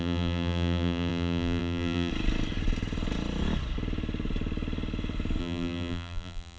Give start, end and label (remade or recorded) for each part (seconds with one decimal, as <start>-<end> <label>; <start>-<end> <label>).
0.0-2.1 remade; 2.1-5.4 recorded; 5.4-6.6 remade